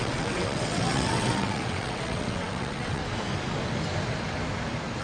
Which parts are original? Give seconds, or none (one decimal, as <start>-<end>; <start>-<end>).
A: 3.0-5.0

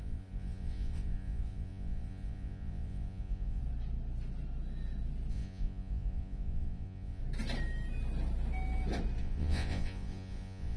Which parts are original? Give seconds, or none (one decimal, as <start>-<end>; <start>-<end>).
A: 3.6-5.3; 7.2-9.2